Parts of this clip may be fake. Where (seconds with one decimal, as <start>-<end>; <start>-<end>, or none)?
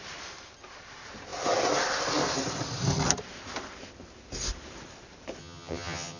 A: 5.4-6.2